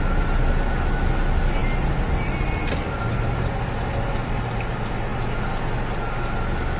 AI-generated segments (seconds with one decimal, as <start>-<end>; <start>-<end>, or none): none